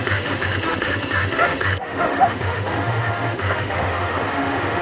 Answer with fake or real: fake